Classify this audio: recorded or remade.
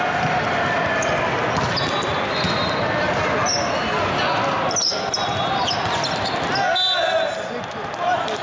recorded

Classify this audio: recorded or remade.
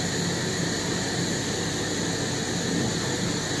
recorded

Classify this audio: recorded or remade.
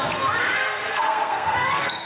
remade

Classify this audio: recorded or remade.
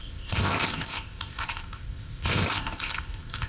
remade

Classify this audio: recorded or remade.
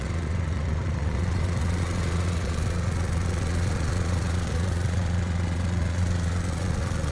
remade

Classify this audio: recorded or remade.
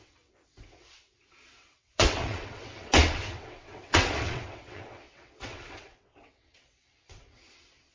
remade